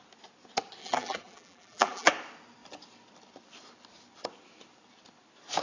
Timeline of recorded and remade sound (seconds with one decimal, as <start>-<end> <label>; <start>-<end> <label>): 0.0-0.8 recorded; 0.8-2.1 remade; 2.1-5.6 recorded

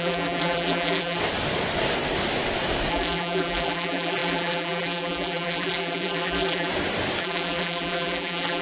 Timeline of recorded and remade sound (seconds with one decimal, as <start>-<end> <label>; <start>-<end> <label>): 0.0-1.2 remade; 1.2-2.9 recorded; 2.9-6.7 remade; 6.7-7.2 recorded; 7.2-8.6 remade

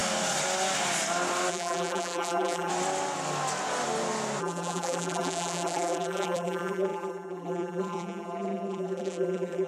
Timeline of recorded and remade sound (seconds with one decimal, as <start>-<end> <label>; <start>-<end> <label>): 0.0-1.5 recorded; 1.5-2.7 remade; 2.7-4.4 recorded; 4.4-9.7 remade